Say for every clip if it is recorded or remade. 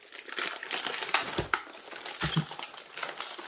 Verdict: recorded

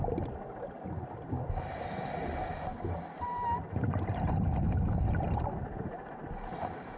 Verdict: recorded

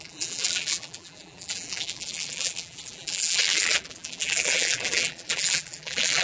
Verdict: remade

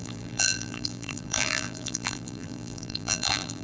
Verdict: remade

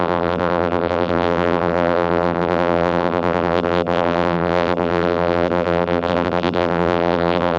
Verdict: remade